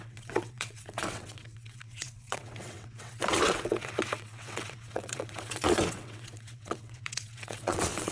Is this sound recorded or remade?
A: remade